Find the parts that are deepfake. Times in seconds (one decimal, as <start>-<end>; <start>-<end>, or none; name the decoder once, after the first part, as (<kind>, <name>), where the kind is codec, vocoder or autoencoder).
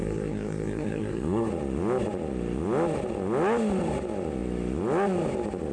0.0-1.5 (codec, SNAC)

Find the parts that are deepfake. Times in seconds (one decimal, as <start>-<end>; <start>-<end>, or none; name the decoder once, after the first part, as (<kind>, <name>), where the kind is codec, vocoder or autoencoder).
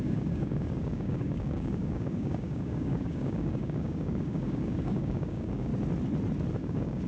0.0-5.7 (codec, DAC); 6.5-7.1